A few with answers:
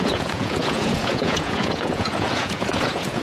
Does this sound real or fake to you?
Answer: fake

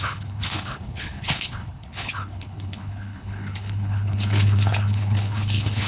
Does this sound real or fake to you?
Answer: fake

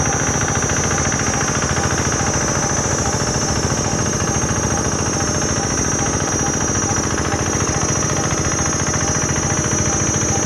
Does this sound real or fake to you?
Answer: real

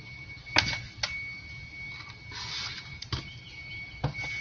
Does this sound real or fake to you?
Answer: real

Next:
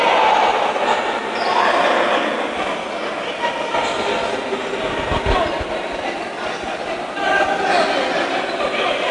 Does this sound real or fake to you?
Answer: real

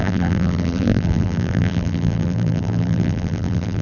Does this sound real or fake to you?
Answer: fake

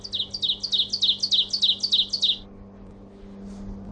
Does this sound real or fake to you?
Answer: real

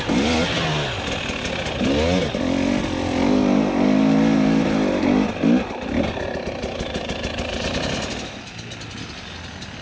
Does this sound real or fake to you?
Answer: real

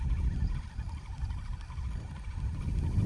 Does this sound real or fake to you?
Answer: real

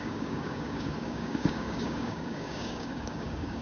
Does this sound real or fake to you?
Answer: fake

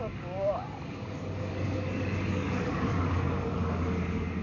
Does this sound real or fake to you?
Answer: fake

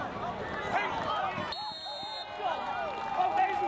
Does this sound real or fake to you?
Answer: real